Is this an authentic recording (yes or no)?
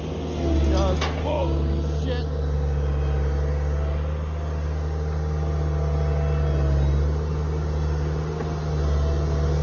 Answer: yes